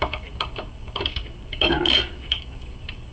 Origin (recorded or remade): remade